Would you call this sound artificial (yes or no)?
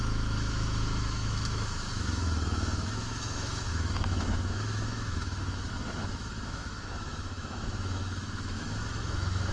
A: yes